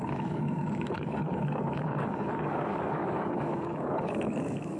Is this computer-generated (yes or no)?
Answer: yes